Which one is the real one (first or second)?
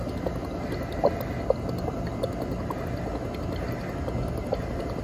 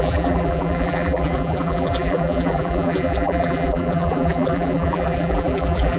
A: first